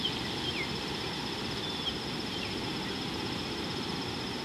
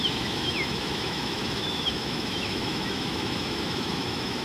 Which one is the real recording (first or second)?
first